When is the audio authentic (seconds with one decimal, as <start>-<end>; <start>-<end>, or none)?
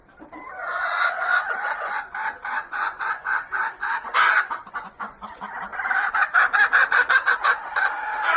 0.0-0.6; 5.4-8.4